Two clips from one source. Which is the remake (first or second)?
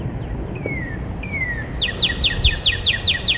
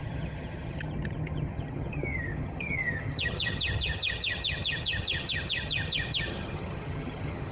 second